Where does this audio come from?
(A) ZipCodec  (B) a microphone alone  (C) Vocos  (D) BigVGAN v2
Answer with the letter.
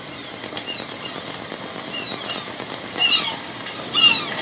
B